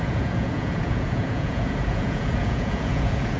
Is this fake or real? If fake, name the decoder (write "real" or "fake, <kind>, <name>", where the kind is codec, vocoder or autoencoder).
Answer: fake, vocoder, Vocos